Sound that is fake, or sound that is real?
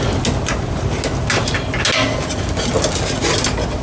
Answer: real